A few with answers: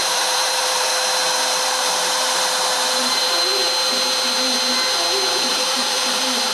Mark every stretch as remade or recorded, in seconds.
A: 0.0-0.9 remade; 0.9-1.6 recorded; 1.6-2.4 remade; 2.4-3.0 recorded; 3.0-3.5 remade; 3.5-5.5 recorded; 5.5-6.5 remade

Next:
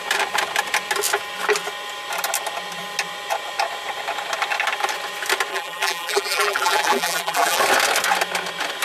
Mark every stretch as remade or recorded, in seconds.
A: 0.0-5.5 recorded; 5.5-7.6 remade; 7.6-8.8 recorded